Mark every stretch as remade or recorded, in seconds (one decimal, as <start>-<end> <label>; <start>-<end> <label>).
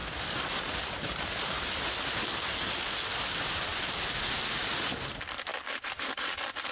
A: 0.0-5.5 recorded; 5.5-6.7 remade